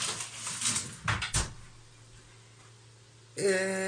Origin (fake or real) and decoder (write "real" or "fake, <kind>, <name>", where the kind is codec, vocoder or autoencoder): real